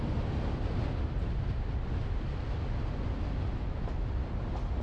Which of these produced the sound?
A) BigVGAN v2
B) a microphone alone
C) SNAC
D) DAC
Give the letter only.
B